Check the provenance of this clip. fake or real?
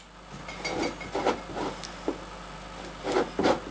real